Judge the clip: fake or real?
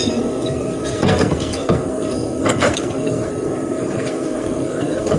fake